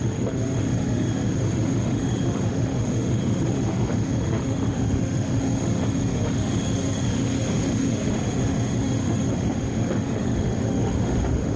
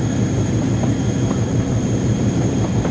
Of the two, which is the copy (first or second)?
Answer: first